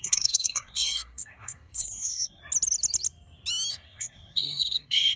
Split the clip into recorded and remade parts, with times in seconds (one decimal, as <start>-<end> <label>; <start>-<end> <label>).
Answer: 0.0-2.4 remade; 2.4-3.7 recorded; 3.7-5.2 remade